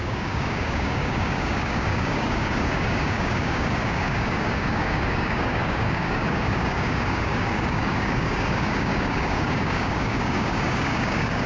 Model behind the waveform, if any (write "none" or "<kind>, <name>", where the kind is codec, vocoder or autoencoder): codec, DAC